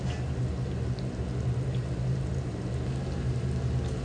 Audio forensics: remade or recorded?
recorded